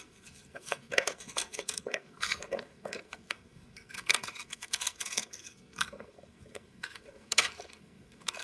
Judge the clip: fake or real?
fake